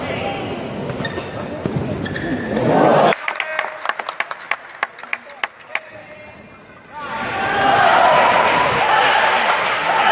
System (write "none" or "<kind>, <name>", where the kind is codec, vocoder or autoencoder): none